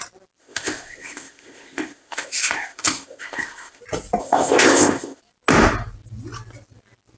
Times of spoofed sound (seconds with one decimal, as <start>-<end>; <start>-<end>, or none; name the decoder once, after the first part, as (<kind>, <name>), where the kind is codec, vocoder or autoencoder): 0.4-3.8 (codec, ZipCodec); 4.2-5.2